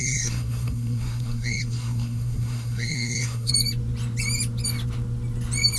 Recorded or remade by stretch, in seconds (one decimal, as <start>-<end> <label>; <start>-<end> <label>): 0.0-3.5 remade; 3.5-5.8 recorded

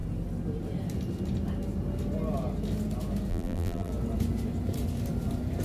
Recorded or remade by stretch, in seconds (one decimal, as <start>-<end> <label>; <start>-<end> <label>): 0.0-3.3 recorded; 3.3-3.9 remade; 3.9-5.6 recorded

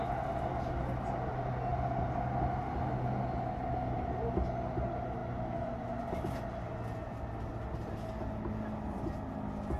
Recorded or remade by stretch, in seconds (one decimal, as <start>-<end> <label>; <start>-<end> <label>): 0.0-9.8 recorded

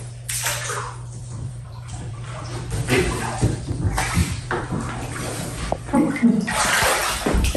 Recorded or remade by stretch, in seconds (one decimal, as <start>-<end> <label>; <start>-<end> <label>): 0.0-1.2 recorded; 1.2-2.4 remade; 2.4-2.8 recorded; 2.8-3.7 remade; 3.7-4.2 recorded; 4.2-6.6 remade; 6.6-7.0 recorded; 7.0-7.6 remade

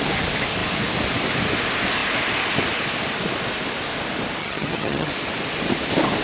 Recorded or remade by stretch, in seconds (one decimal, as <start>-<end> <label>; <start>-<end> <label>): 0.0-4.4 recorded; 4.4-5.1 remade; 5.1-6.2 recorded

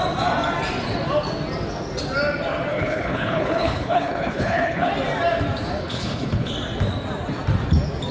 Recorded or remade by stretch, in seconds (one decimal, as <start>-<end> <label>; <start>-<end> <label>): 0.0-2.7 recorded; 2.7-4.9 remade; 4.9-5.8 recorded; 5.8-6.5 remade; 6.5-8.1 recorded

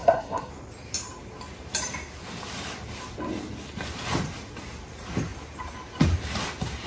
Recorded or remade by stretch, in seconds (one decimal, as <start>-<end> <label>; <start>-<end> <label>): 0.0-0.5 remade; 0.5-6.9 recorded